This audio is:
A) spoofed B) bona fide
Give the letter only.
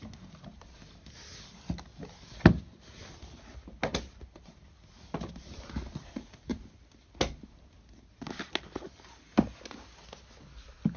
B